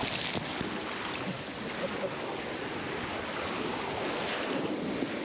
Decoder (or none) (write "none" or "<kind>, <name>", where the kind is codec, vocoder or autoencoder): none